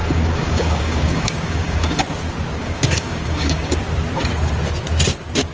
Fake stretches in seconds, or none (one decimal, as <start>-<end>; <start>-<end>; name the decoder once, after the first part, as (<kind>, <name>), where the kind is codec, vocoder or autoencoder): 0.0-2.0 (codec, DAC); 2.6-3.8